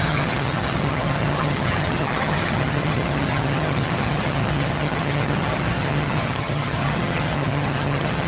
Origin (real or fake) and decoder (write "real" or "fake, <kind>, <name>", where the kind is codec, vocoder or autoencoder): fake, vocoder, HiFi-GAN